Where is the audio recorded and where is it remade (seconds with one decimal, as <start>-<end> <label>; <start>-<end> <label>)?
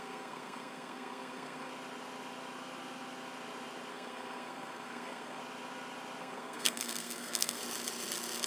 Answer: 0.0-1.7 remade; 1.7-3.9 recorded; 3.9-5.4 remade; 5.4-6.2 recorded; 6.2-7.6 remade; 7.6-8.5 recorded